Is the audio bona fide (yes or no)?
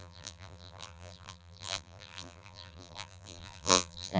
no